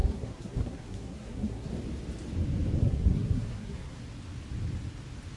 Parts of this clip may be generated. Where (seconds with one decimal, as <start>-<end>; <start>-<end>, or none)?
0.0-1.7; 2.8-4.0